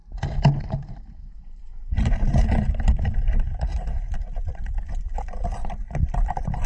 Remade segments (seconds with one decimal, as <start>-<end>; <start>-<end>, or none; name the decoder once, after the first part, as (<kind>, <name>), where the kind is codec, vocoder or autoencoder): 0.6-6.7 (vocoder, BigVGAN v2)